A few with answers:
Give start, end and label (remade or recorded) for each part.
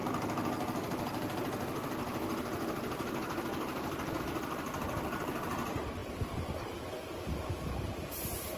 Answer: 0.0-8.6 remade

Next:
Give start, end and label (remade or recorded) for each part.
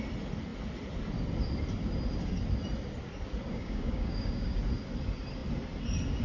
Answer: 0.0-3.5 recorded; 3.5-4.6 remade; 4.6-6.2 recorded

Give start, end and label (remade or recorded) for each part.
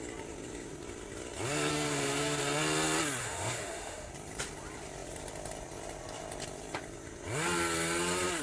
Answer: 0.0-1.7 recorded; 1.7-2.4 remade; 2.4-3.2 recorded; 3.2-4.1 remade; 4.1-8.4 recorded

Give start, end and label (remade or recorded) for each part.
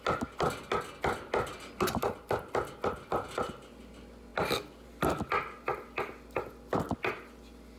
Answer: 0.0-7.8 recorded